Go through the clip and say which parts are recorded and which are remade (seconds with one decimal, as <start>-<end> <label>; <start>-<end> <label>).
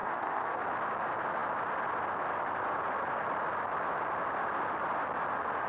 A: 0.0-0.6 remade; 0.6-5.7 recorded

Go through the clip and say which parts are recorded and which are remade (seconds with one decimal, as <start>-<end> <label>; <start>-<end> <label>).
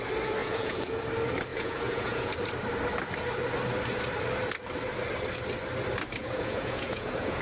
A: 0.0-0.4 recorded; 0.4-1.0 remade; 1.0-1.5 recorded; 1.5-2.3 remade; 2.3-6.2 recorded; 6.2-7.4 remade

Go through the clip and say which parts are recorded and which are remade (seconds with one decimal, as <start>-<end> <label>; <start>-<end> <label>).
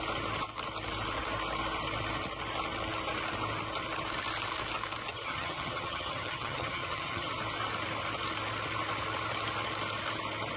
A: 0.0-5.1 recorded; 5.1-7.3 remade; 7.3-10.6 recorded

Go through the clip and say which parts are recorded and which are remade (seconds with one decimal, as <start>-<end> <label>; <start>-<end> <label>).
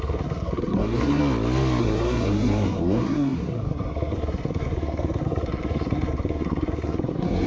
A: 0.0-1.2 remade; 1.2-1.8 recorded; 1.8-7.5 remade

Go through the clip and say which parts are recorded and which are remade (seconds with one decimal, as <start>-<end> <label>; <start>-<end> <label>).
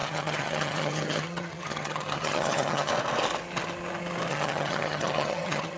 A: 0.0-2.9 remade; 2.9-4.3 recorded; 4.3-5.8 remade